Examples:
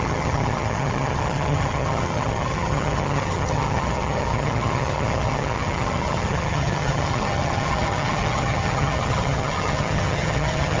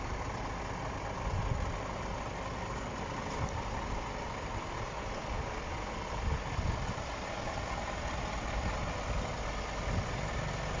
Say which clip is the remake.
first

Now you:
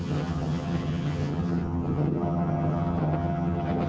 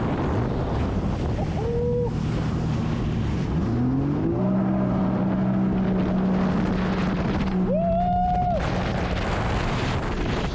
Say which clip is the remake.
first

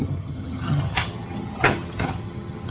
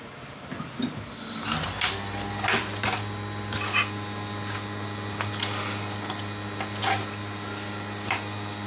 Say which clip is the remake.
first